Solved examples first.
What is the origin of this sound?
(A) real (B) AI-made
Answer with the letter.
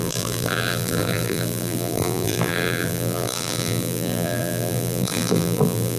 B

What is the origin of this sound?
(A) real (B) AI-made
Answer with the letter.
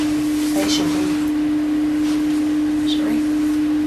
A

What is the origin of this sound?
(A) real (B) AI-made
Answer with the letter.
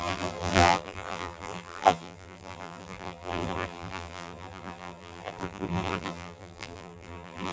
B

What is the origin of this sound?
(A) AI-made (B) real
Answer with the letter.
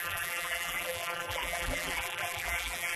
A